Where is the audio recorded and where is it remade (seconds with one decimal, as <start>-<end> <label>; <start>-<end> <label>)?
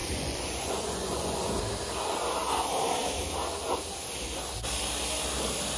0.0-1.6 remade; 1.6-5.8 recorded